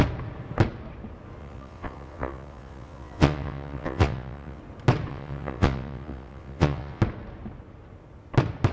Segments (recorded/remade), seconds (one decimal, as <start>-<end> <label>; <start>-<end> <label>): 0.0-1.4 recorded; 1.4-4.6 remade; 4.6-5.1 recorded; 5.1-7.0 remade; 7.0-8.7 recorded